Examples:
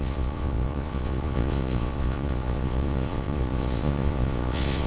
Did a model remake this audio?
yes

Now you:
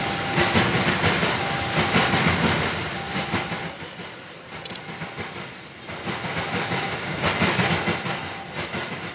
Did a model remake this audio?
no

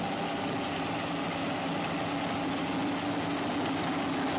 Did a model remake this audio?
no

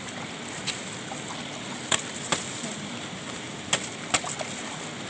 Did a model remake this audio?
no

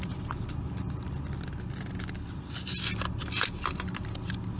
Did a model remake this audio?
no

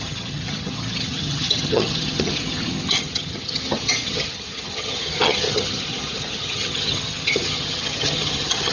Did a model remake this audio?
yes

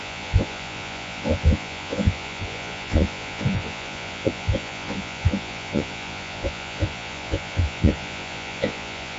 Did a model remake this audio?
yes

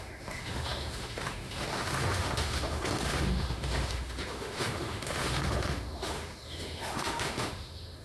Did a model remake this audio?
yes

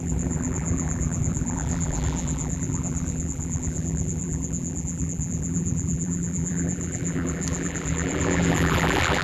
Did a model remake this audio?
yes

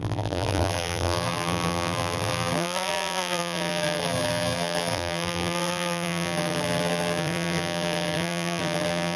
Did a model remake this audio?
yes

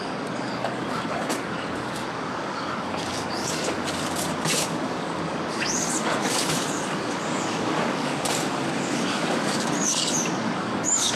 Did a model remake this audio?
yes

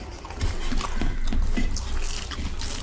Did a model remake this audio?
no